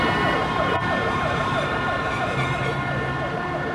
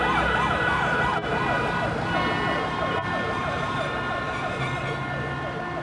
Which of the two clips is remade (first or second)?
first